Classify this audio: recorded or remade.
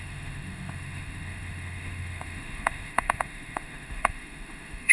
remade